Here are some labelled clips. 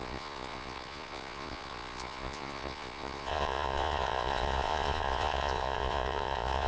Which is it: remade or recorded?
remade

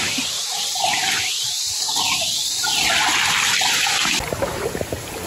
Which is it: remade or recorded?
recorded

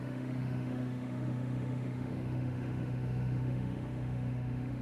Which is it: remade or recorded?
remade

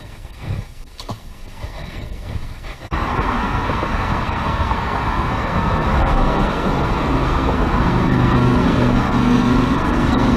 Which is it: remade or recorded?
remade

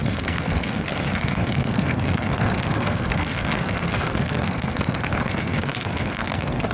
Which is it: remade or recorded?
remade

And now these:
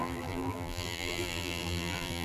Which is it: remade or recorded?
remade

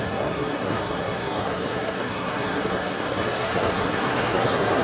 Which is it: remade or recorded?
remade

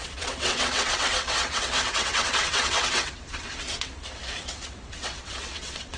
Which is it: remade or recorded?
remade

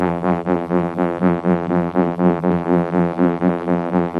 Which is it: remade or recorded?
remade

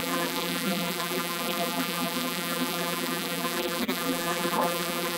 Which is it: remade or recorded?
remade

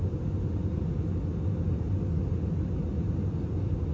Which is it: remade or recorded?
recorded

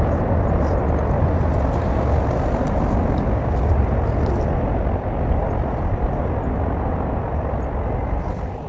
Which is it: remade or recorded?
recorded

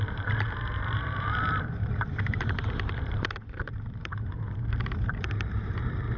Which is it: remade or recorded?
remade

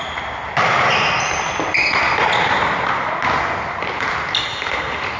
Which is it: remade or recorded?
recorded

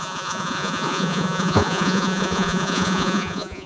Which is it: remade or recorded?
remade